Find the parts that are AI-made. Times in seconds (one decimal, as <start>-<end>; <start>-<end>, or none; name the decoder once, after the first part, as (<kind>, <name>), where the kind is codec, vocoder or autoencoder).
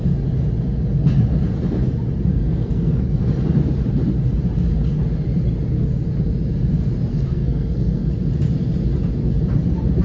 2.3-3.3 (codec, SNAC); 7.1-8.1